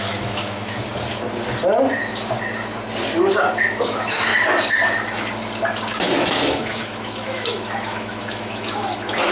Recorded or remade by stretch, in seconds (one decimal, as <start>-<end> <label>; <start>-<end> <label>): 0.0-0.9 remade; 0.9-3.7 recorded; 3.7-4.3 remade; 4.3-6.3 recorded; 6.3-9.3 remade